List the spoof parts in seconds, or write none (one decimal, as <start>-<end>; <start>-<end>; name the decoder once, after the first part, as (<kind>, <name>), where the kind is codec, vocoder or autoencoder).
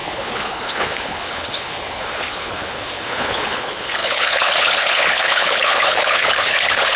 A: 0.0-7.0 (codec, HILCodec)